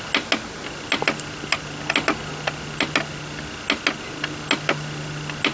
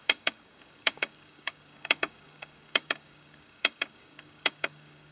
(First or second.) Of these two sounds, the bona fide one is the first